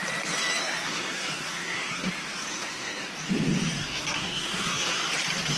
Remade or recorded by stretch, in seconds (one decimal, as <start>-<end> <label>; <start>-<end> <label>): 0.0-0.6 recorded; 0.6-2.1 remade; 2.1-2.5 recorded; 2.5-3.1 remade; 3.1-3.8 recorded; 3.8-5.0 remade; 5.0-5.6 recorded